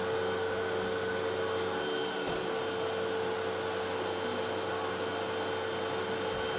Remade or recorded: recorded